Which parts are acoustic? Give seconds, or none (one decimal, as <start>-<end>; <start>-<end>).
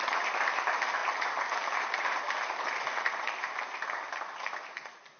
0.0-5.2